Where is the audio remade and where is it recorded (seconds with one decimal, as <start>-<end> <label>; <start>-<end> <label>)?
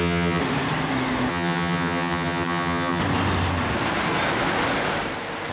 0.0-0.4 remade; 0.4-1.3 recorded; 1.3-3.0 remade; 3.0-5.5 recorded